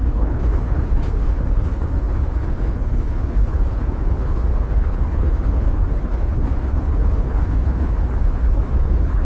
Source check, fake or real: fake